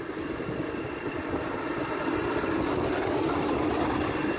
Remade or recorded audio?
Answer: recorded